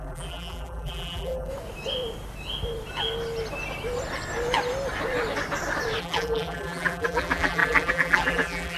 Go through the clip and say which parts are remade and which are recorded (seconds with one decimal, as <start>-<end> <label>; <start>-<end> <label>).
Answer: 0.0-1.5 remade; 1.5-6.0 recorded; 6.0-8.8 remade